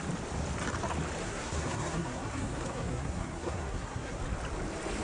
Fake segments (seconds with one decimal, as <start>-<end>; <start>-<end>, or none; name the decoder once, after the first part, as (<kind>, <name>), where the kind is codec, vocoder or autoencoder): 1.2-4.2 (codec, SNAC)